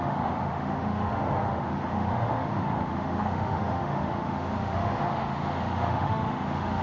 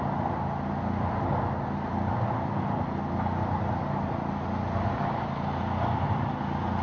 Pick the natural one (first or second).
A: second